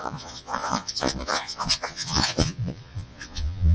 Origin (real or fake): fake